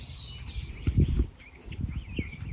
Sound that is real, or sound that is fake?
fake